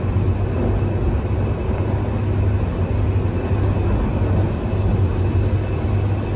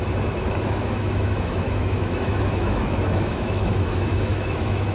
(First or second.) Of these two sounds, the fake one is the second